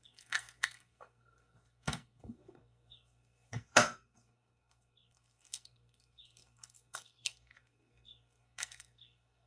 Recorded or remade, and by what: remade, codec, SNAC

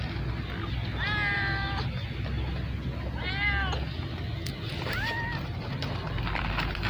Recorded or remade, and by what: recorded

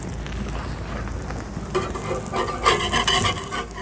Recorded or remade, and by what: recorded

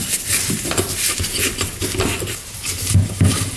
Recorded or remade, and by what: recorded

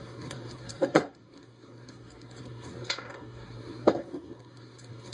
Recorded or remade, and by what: remade, codec, SNAC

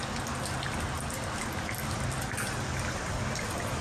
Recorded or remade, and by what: recorded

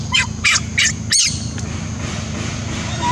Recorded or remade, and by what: recorded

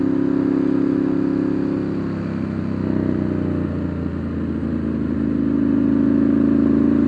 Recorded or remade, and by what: recorded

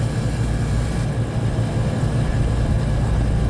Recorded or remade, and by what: recorded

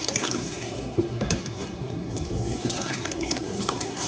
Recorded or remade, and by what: remade, codec, SNAC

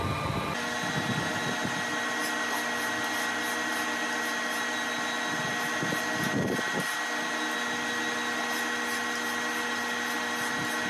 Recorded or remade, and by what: recorded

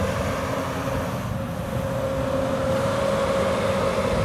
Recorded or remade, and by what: recorded